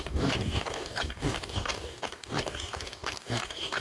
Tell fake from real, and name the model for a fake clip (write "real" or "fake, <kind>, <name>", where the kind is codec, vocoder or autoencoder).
fake, codec, DAC